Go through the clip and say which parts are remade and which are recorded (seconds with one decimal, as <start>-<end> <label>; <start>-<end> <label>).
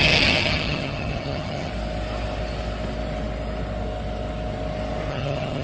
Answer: 0.0-1.7 remade; 1.7-5.1 recorded; 5.1-5.6 remade